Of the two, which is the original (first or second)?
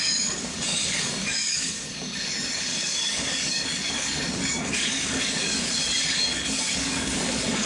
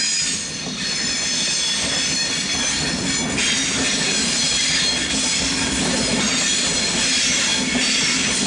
second